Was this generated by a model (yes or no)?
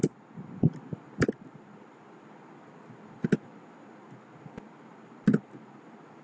no